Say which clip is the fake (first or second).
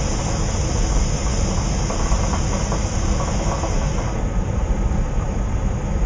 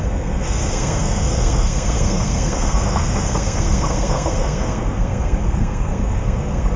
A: second